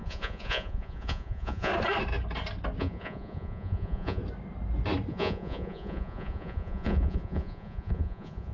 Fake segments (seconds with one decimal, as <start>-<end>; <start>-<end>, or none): 0.0-1.7; 2.8-4.2; 5.1-8.5